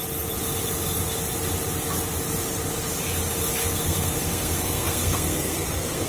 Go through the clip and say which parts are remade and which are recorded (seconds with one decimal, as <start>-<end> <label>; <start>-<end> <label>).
0.0-3.6 recorded; 3.6-6.1 remade